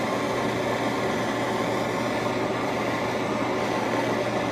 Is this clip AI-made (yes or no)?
no